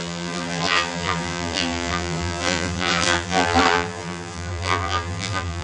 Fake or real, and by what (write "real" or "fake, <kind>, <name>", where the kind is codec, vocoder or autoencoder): fake, vocoder, BigVGAN v2